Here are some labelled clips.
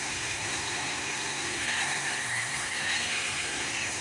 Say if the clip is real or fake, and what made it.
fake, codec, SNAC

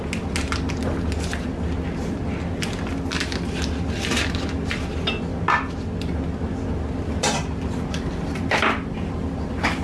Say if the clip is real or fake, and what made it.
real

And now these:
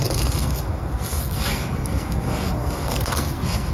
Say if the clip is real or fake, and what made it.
fake, codec, SNAC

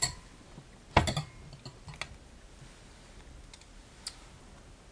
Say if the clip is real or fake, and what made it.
real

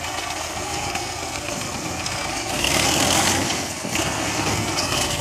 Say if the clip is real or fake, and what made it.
fake, codec, SNAC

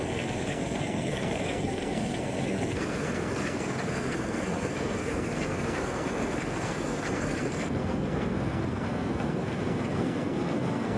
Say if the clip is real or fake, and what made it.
fake, codec, SNAC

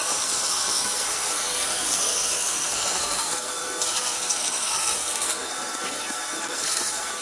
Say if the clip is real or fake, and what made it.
fake, codec, SNAC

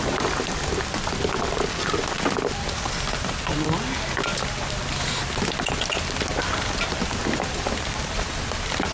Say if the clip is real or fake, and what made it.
real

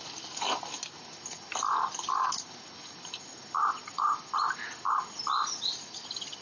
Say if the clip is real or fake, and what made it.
real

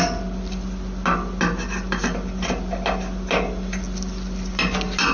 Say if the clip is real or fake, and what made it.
real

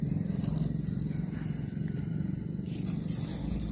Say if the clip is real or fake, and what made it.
real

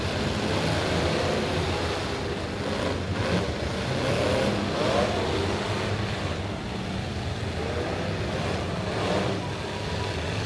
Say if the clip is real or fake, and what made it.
real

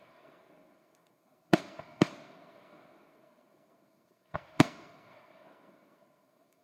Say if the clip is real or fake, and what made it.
fake, codec, SNAC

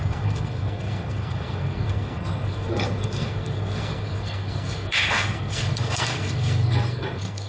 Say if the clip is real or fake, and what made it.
fake, codec, SNAC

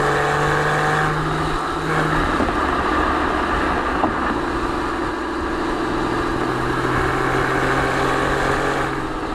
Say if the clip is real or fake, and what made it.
real